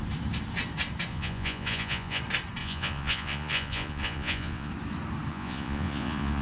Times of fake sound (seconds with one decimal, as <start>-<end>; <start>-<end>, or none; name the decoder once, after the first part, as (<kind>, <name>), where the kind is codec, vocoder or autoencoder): 1.1-2.2 (vocoder, Vocos); 2.6-4.7; 5.3-6.4